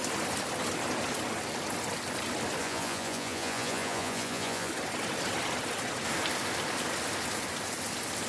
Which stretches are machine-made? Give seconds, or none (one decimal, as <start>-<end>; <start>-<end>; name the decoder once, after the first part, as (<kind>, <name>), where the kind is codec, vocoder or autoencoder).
2.6-4.7 (vocoder, Vocos)